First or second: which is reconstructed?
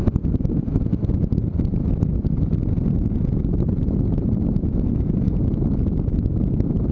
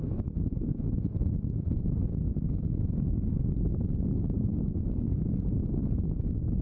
second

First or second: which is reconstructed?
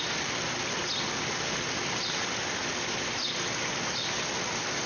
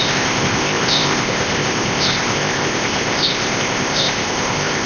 second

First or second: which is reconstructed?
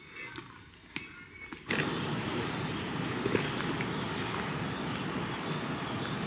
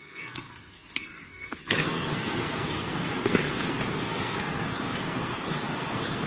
second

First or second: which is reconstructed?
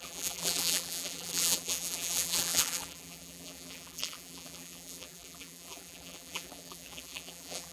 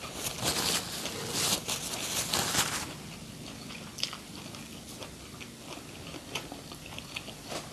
first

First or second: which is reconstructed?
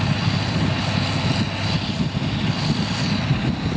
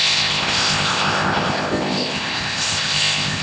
second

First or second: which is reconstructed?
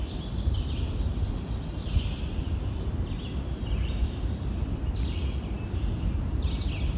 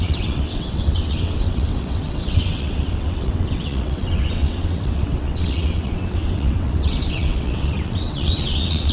second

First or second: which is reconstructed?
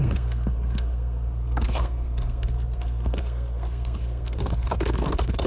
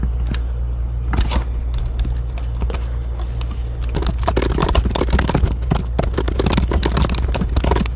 first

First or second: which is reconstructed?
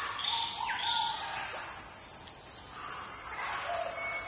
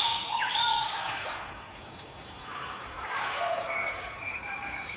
second